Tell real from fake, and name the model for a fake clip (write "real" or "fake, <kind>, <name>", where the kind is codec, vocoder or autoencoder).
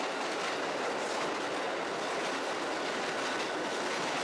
real